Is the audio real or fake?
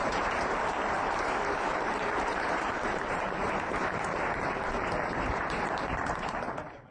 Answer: fake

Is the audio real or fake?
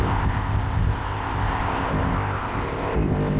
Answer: fake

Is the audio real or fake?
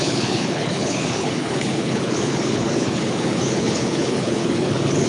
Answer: fake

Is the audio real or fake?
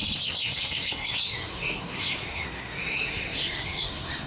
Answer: fake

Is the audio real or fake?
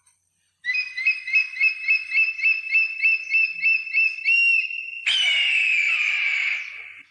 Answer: fake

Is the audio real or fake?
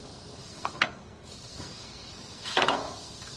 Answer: fake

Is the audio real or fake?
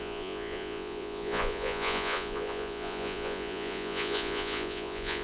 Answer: fake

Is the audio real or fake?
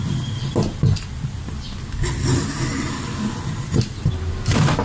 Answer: fake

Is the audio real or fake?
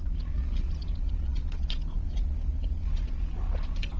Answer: fake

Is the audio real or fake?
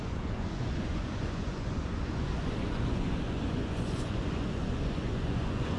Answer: fake